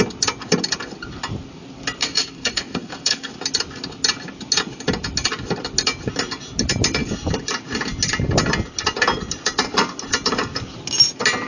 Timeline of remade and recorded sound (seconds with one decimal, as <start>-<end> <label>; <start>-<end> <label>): 0.0-2.0 recorded; 2.0-3.3 remade; 3.3-11.5 recorded